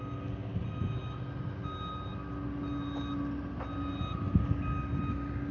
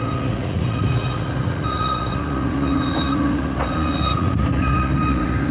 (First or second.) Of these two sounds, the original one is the first